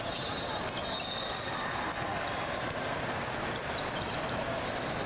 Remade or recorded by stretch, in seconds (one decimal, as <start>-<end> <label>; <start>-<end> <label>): 0.0-5.1 recorded